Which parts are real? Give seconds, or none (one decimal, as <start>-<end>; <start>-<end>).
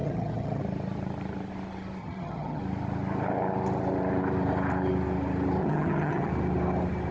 0.6-2.0; 2.6-5.6; 6.3-7.1